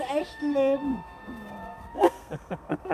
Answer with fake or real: fake